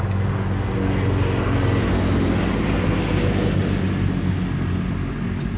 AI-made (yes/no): no